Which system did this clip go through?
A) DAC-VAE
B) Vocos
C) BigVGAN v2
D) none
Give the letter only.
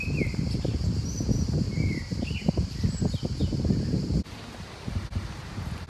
D